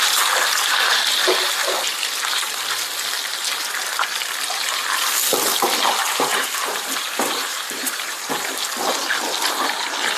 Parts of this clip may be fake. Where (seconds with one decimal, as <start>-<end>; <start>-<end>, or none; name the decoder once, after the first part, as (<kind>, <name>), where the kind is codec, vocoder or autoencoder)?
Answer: 6.0-8.2 (vocoder, BigVGAN v2)